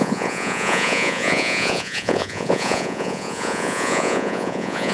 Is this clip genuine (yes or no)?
no